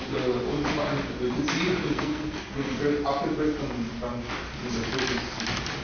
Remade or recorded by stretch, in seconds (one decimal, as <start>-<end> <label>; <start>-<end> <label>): 0.0-1.8 recorded; 1.8-2.8 remade; 2.8-5.8 recorded